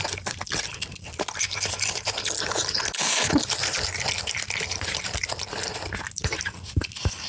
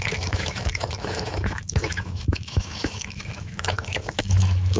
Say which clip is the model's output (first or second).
second